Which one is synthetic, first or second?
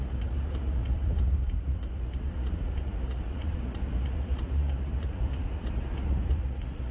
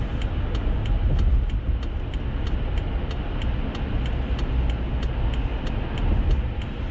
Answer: first